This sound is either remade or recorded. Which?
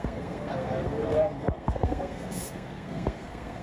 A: remade